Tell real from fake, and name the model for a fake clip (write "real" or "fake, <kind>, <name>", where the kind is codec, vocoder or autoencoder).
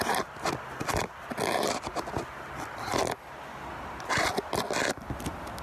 real